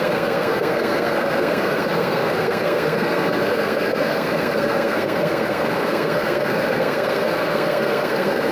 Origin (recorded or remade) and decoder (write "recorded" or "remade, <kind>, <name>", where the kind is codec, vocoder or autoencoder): remade, codec, SNAC